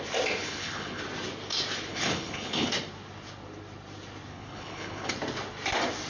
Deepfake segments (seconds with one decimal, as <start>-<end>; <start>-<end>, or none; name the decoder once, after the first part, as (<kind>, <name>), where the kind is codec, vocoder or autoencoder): 0.4-1.0 (codec, HILCodec); 1.9-2.7; 4.3-5.1